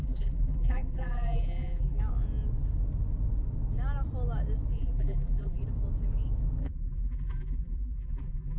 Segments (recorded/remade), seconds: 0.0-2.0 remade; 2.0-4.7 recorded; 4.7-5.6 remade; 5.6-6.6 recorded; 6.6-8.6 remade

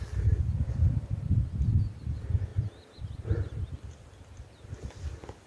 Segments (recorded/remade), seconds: 0.0-5.5 recorded

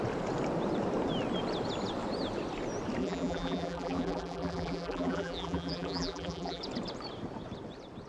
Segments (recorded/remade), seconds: 0.0-3.0 recorded; 3.0-6.6 remade; 6.6-8.1 recorded

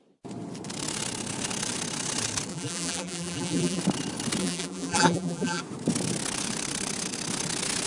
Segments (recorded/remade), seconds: 0.0-2.5 recorded; 2.5-3.8 remade; 3.8-4.4 recorded; 4.4-5.6 remade; 5.6-7.9 recorded

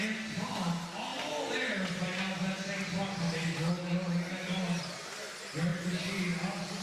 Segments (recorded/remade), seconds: 0.0-6.8 recorded

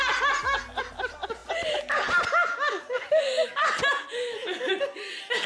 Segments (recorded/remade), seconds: 0.0-5.5 recorded

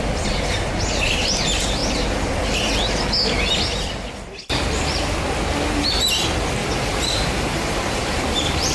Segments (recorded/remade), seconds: 0.0-6.6 recorded; 6.6-8.7 remade